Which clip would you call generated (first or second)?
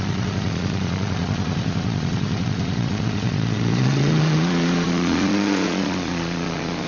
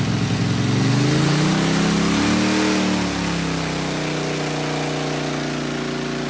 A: first